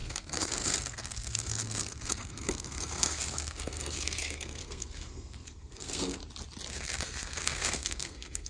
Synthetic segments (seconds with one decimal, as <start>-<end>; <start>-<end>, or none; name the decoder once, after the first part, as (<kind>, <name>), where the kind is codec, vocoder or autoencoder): 0.0-6.2 (codec, SNAC); 6.7-8.5